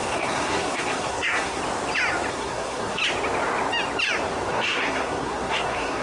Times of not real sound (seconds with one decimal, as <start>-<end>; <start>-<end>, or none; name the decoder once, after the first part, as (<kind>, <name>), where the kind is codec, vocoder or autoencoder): 0.0-1.6 (codec, SNAC); 2.3-3.0; 4.5-6.0